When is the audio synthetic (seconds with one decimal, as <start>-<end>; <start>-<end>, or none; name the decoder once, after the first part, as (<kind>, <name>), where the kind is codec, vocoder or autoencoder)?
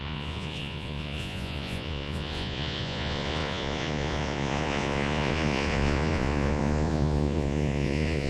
0.0-8.3 (vocoder, Vocos)